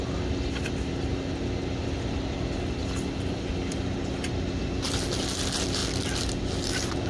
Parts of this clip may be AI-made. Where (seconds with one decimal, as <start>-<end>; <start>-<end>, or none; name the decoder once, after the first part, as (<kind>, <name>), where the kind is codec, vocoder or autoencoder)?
none